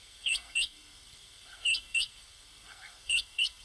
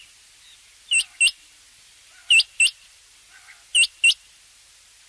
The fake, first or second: first